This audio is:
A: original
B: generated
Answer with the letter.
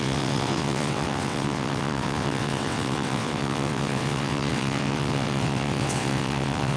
B